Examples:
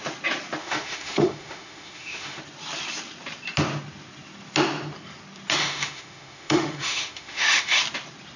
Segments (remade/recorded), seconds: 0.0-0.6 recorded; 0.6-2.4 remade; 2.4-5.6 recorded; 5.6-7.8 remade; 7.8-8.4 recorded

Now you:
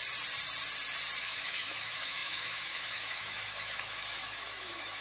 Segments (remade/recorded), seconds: 0.0-1.2 recorded; 1.2-5.0 remade

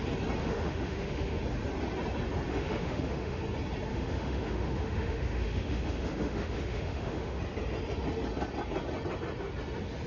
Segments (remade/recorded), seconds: 0.0-0.4 recorded; 0.4-1.4 remade; 1.4-2.5 recorded; 2.5-3.4 remade; 3.4-3.9 recorded; 3.9-7.4 remade; 7.4-10.1 recorded

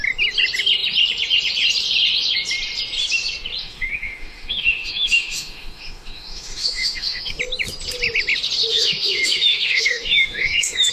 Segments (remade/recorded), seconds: 0.0-3.6 recorded; 3.6-7.4 remade; 7.4-8.7 recorded; 8.7-10.9 remade

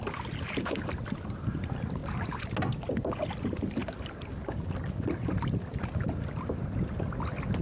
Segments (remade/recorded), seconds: 0.0-7.6 recorded

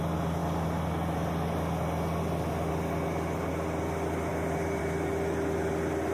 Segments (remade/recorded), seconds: 0.0-6.1 recorded

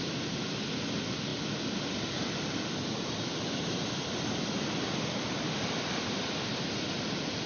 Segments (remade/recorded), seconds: 0.0-7.5 recorded